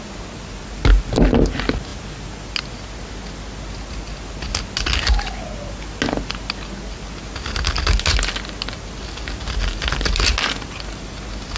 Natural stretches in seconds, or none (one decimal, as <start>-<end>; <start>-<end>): 0.0-11.6